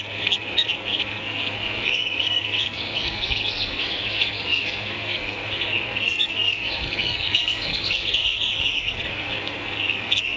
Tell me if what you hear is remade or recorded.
remade